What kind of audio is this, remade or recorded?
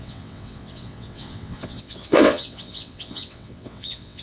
remade